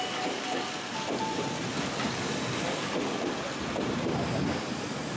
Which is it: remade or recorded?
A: recorded